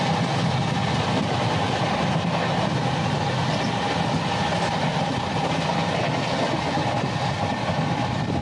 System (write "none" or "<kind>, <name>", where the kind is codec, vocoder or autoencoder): none